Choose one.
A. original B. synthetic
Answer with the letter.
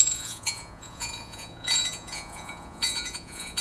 B